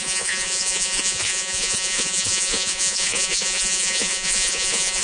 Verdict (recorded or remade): remade